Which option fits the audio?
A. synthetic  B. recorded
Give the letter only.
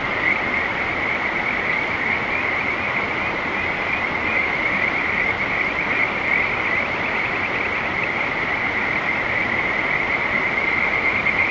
B